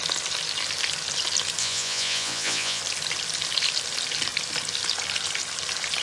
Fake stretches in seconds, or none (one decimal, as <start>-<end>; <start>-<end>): 1.6-2.8